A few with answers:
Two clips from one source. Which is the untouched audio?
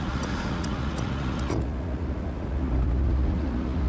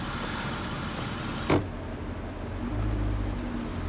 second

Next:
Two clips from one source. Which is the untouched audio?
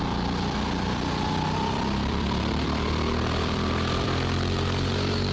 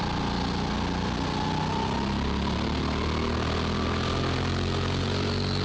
second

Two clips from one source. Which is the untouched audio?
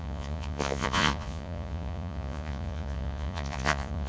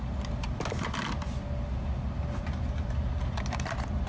second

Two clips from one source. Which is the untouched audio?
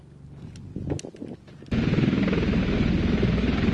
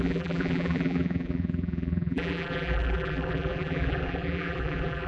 first